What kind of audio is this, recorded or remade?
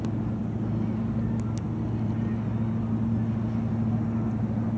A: recorded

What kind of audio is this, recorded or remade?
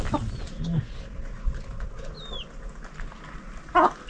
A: recorded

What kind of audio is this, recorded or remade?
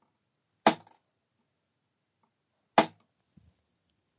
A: recorded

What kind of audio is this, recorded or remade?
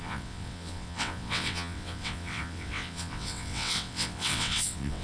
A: remade